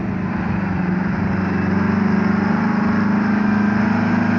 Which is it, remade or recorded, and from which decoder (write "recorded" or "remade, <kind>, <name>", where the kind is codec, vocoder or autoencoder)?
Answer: recorded